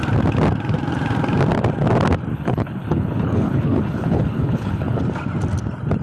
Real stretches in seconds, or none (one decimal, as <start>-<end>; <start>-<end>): 0.0-2.3; 5.0-6.0